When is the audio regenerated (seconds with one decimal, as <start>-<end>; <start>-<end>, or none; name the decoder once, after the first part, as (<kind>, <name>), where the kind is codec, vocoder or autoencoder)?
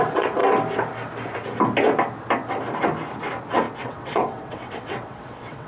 0.0-0.4 (vocoder, WaveNeXt); 3.8-5.7